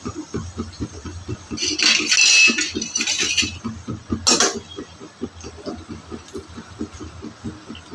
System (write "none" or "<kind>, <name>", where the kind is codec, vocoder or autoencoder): none